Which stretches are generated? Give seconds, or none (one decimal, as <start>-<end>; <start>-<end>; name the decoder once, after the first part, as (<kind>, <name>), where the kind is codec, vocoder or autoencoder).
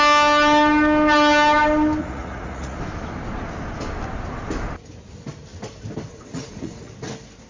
2.0-2.8 (vocoder, Vocos); 6.1-6.9